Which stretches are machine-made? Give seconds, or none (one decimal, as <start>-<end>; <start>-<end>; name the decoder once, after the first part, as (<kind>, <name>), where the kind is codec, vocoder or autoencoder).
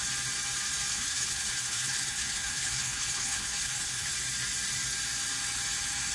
0.9-4.1 (codec, HILCodec)